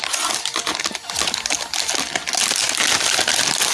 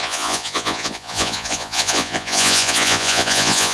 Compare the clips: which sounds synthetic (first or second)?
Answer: second